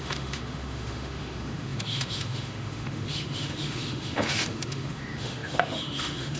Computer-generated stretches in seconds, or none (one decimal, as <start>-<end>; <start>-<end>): 0.0-6.4